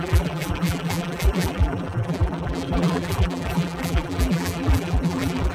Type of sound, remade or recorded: remade